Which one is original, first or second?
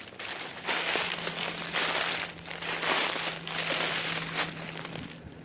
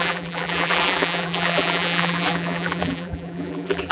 first